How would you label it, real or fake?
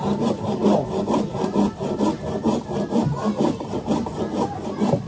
real